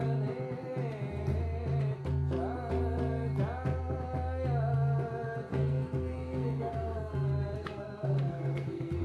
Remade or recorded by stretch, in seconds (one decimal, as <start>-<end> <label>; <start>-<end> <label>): 0.0-5.5 recorded; 5.5-9.0 remade